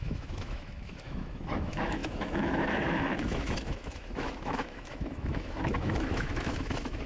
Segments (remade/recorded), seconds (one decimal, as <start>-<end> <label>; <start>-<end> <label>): 0.0-7.1 remade